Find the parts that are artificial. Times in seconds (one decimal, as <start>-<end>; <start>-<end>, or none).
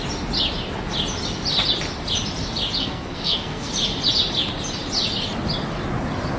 2.8-3.7